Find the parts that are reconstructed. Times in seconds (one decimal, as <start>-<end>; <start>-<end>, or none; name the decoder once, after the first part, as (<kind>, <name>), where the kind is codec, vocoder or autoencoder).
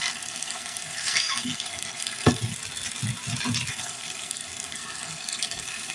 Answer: 0.0-2.5 (codec, SNAC); 3.7-5.9